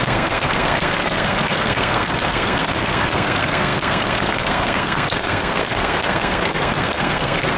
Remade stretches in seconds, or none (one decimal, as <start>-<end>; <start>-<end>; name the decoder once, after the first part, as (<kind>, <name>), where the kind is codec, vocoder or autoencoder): 0.0-7.6 (codec, SNAC)

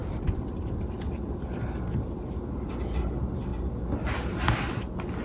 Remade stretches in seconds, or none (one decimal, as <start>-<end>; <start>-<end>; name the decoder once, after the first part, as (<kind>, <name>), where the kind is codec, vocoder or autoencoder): 3.0-3.5 (vocoder, BigVGAN v2)